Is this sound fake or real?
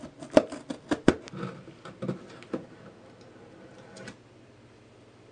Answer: real